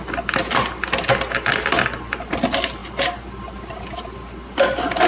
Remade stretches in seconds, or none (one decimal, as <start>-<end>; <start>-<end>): none

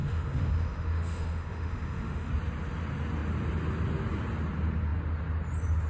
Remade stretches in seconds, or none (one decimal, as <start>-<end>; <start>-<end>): 0.0-2.3

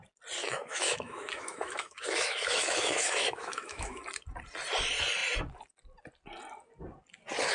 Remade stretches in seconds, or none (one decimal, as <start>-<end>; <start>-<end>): 0.4-4.0

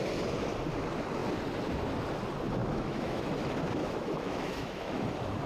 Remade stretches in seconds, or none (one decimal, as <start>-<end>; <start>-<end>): 2.6-3.2; 3.8-4.9